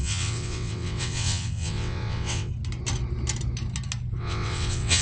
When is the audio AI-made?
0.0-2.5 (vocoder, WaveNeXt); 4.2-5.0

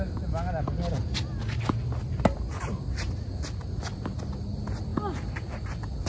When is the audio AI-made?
none

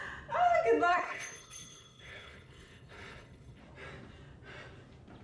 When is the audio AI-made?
0.9-3.6 (codec, HILCodec)

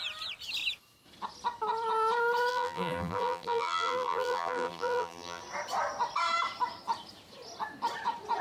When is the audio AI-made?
2.5-5.4 (vocoder, BigVGAN v2)

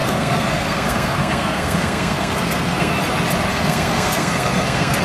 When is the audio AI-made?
0.0-3.0 (codec, SNAC); 3.5-5.0

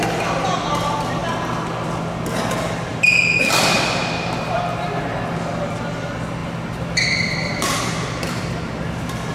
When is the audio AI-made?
2.9-5.2 (vocoder, BigVGAN v2); 6.4-8.5